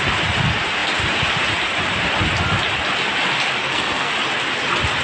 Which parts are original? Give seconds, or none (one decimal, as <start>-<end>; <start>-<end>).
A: 0.0-3.6; 4.1-5.0